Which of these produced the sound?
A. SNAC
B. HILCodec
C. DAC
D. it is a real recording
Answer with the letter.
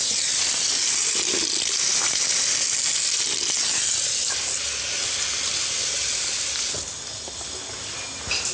D